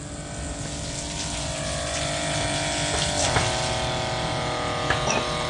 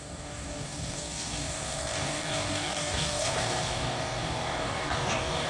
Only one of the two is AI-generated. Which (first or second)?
second